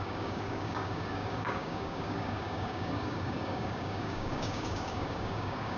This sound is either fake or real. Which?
fake